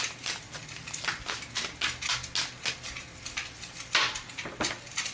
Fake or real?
real